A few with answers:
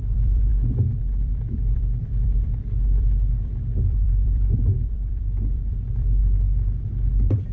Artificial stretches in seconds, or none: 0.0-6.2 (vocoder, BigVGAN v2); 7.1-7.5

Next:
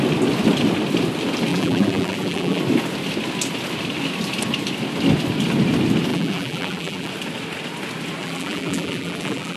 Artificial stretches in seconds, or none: 1.5-2.6 (vocoder, BigVGAN v2); 6.1-7.1; 8.2-9.6

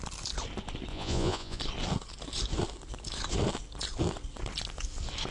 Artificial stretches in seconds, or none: 0.9-1.6 (vocoder, Vocos)

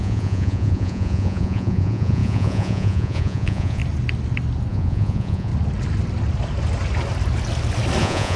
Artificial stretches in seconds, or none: 0.0-3.8 (vocoder, Vocos); 4.7-5.5; 8.0-8.4

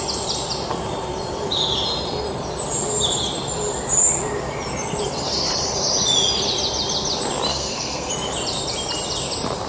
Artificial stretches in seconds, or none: 7.5-8.1 (codec, SNAC)

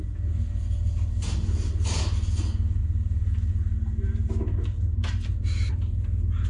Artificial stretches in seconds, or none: 2.8-3.5 (vocoder, BigVGAN v2); 5.3-5.8

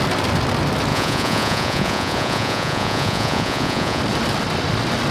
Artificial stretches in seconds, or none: 0.9-4.0 (vocoder, Vocos)

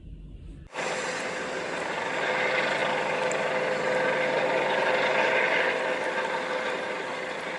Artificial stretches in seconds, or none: none